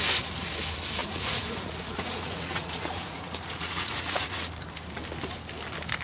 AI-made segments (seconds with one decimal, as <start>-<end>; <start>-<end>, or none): 1.0-4.5